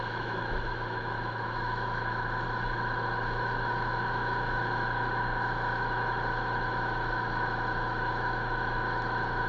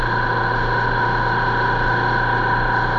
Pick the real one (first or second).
second